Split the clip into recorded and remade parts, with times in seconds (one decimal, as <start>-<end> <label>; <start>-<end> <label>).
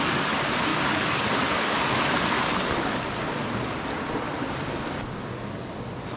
0.0-0.7 recorded; 0.7-1.3 remade; 1.3-6.2 recorded